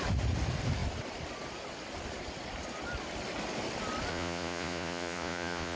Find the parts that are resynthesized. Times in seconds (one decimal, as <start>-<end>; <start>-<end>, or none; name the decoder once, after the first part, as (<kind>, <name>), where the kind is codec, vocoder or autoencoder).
4.1-5.8 (vocoder, Vocos)